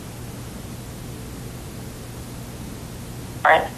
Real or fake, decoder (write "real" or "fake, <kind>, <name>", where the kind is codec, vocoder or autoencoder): real